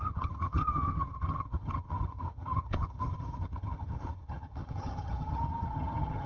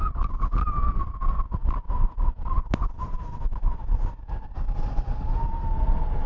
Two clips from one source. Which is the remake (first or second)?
first